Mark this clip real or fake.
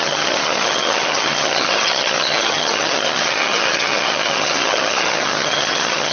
fake